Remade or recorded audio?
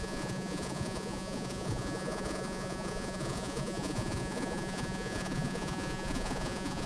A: remade